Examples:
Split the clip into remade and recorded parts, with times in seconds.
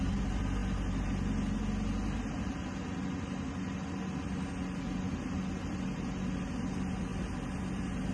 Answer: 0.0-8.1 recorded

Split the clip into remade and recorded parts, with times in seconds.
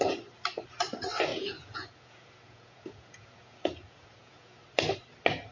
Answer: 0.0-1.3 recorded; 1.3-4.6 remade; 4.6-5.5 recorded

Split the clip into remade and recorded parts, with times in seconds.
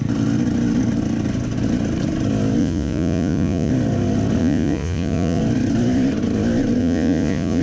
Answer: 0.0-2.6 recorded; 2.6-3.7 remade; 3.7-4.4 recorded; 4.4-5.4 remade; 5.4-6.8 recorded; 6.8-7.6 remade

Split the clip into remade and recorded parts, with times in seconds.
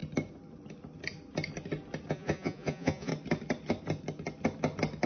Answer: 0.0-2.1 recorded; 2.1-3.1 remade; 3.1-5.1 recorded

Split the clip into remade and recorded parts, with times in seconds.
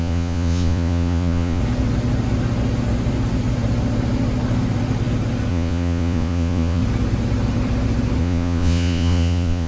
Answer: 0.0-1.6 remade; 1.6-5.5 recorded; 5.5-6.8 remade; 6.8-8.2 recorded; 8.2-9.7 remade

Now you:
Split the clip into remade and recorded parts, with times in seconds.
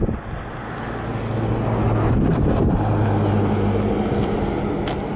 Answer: 0.0-5.2 recorded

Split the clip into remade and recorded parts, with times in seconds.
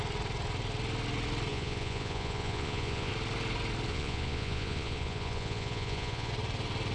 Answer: 0.0-1.5 recorded; 1.5-3.1 remade; 3.1-3.9 recorded; 3.9-6.3 remade; 6.3-6.9 recorded